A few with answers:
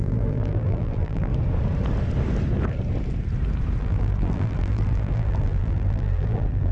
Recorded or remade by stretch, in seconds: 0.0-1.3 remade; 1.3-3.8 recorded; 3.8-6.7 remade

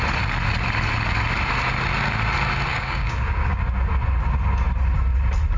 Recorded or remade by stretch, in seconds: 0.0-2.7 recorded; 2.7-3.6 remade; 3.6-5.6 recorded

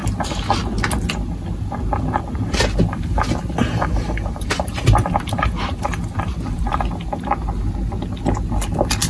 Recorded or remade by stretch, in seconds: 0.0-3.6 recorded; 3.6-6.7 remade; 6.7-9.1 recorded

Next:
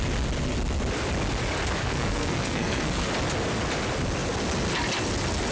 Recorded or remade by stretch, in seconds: 0.0-1.8 recorded; 1.8-3.1 remade; 3.1-5.5 recorded